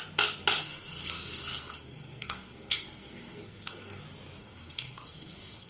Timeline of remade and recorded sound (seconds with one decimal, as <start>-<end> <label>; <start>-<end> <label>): 0.0-0.6 recorded; 0.6-4.0 remade; 4.0-4.4 recorded; 4.4-5.7 remade